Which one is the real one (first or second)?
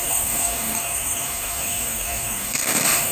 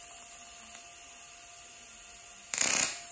second